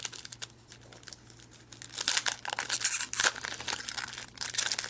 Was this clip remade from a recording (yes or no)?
no